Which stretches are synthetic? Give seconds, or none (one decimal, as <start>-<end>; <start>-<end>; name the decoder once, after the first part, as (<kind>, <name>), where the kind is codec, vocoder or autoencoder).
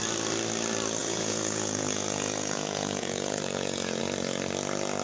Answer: 1.0-4.0 (vocoder, Vocos)